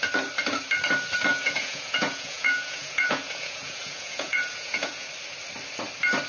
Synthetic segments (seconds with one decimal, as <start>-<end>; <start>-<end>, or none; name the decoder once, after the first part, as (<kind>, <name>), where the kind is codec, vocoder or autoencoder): 1.3-5.1 (vocoder, Vocos)